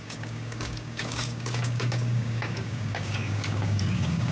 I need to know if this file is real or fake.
fake